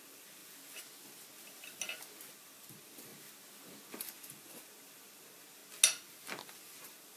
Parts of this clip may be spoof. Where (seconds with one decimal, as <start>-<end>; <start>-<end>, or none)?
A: 0.0-0.4; 2.3-3.1; 4.0-5.6; 6.5-7.2